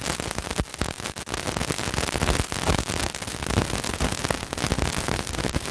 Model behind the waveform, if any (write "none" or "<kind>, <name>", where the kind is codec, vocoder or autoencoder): none